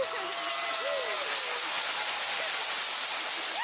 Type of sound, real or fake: real